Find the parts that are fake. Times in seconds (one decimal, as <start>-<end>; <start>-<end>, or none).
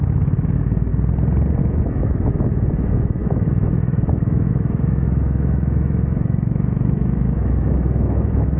0.0-0.9; 1.6-8.6